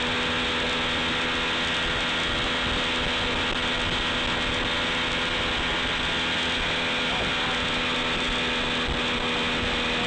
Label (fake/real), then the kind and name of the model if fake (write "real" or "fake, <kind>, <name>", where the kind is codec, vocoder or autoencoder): real